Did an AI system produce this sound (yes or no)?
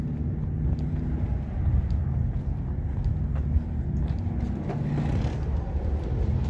no